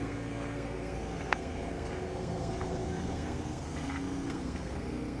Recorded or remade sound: remade